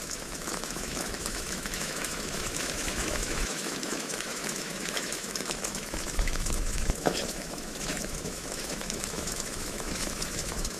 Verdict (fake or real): fake